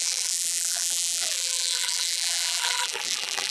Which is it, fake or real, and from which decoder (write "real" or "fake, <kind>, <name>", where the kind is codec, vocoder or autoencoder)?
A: fake, vocoder, BigVGAN v2